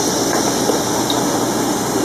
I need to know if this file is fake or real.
real